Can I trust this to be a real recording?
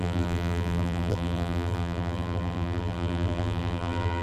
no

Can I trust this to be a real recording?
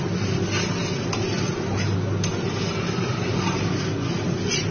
yes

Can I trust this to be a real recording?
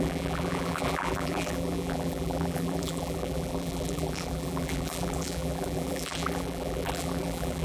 no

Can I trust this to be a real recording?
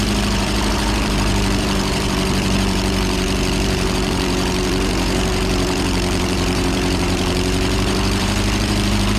no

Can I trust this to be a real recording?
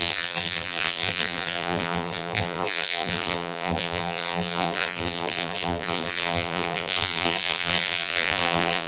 no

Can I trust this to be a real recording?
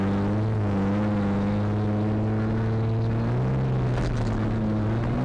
yes